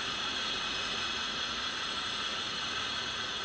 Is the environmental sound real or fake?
fake